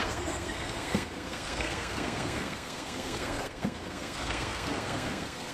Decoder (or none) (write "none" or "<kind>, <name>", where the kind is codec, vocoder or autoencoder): codec, SNAC